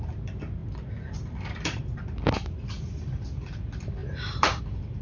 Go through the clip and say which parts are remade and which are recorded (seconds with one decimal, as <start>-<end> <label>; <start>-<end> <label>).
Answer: 0.0-4.0 recorded; 4.0-4.6 remade; 4.6-5.0 recorded